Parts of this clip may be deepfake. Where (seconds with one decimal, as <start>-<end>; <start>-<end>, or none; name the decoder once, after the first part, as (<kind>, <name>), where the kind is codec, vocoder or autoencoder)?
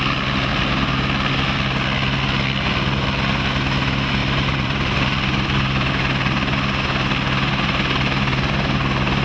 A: 4.2-5.9 (vocoder, BigVGAN v2)